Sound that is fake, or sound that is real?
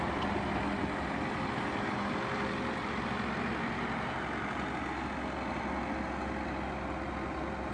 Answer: real